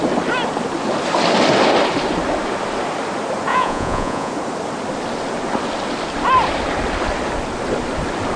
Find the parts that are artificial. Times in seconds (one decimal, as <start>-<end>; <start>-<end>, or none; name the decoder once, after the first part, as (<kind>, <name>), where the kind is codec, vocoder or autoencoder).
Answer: 3.5-4.3 (vocoder, Vocos)